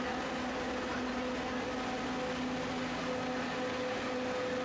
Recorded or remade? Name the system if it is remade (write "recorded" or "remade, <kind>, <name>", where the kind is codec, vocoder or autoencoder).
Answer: recorded